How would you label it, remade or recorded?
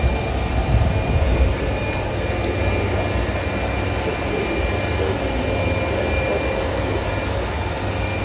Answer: recorded